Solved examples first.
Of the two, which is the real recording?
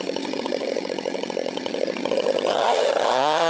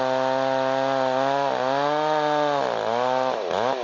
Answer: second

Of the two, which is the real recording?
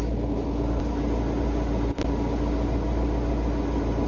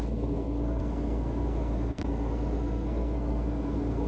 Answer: first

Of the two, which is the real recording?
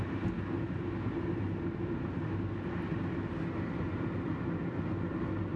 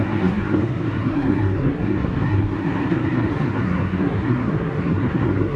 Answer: first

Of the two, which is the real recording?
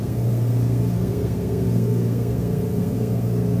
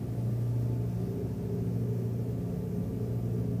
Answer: second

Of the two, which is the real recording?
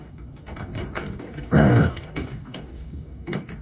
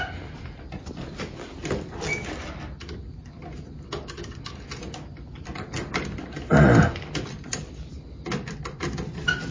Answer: second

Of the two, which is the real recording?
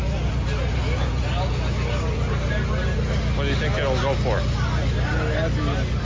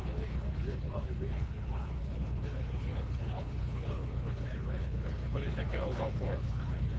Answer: first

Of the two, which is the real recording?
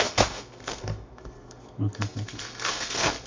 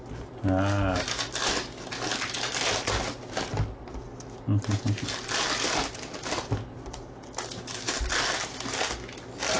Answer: second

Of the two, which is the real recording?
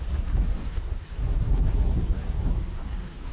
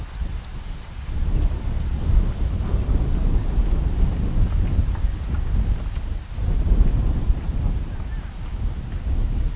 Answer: second